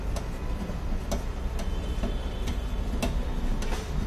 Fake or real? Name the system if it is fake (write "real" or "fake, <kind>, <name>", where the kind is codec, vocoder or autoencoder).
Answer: real